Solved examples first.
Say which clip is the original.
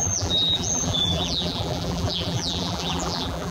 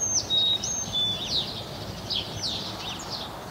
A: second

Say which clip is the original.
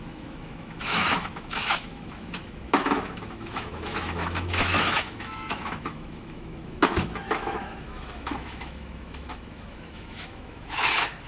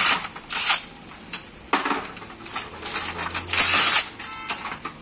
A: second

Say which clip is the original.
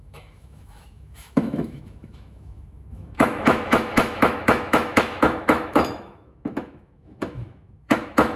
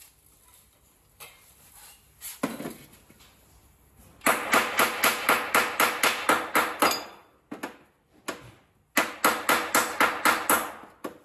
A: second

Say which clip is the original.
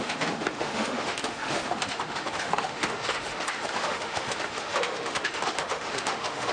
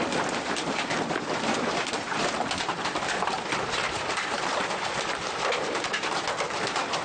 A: second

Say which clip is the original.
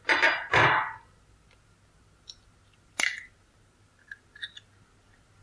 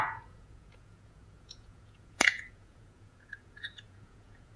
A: first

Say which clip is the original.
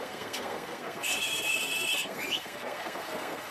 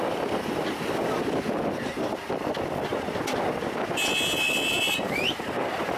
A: second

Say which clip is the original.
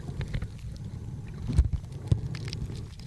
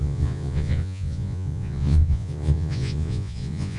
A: first